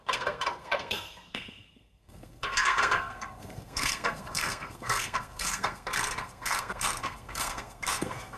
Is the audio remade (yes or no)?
yes